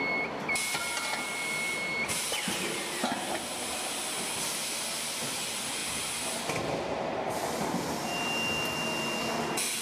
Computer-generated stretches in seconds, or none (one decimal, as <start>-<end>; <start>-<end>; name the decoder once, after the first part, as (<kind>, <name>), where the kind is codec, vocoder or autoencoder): none

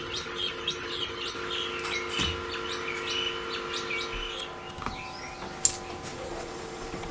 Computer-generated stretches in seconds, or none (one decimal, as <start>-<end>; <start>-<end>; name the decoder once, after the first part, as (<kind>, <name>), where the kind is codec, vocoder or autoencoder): 6.1-7.1 (vocoder, Vocos)

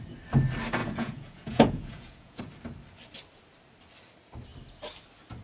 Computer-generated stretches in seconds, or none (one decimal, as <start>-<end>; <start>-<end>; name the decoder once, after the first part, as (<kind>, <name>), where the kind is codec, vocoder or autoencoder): 0.8-2.4 (vocoder, Vocos)

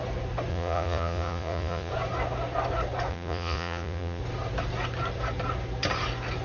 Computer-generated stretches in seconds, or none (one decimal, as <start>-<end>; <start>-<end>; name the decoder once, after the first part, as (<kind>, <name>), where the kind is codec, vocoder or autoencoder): 0.5-1.9 (vocoder, Vocos); 3.1-4.2